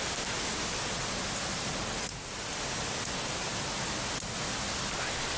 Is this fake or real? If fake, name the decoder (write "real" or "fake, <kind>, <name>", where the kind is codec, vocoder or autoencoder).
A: real